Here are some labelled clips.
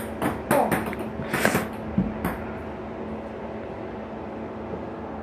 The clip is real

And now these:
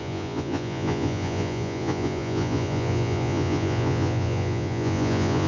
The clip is fake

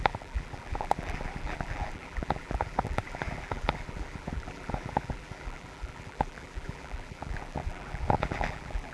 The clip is fake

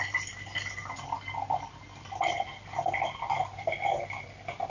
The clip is real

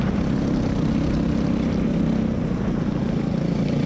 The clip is real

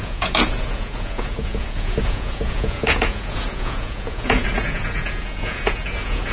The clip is fake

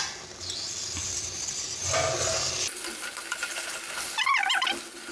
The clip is real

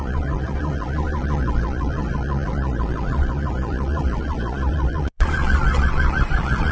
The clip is fake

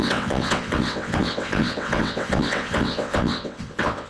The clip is fake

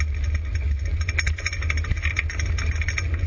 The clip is real